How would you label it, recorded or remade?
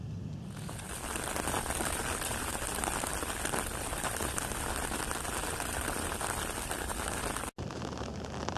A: recorded